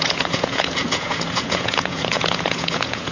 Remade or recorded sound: remade